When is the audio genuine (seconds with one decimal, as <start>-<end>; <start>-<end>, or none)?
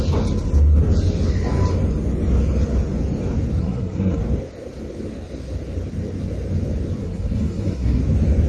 0.0-3.6; 4.2-7.0; 8.0-8.5